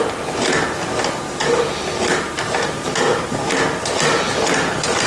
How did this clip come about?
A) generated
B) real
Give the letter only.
B